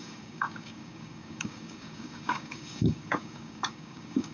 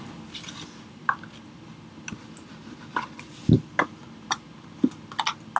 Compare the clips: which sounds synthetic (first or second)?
first